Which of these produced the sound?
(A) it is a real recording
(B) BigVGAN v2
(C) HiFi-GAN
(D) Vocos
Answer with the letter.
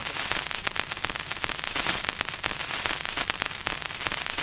A